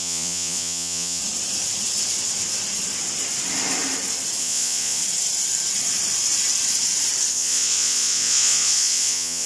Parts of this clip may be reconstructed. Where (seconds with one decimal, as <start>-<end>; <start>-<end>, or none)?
0.0-1.2; 4.4-5.0; 7.3-9.5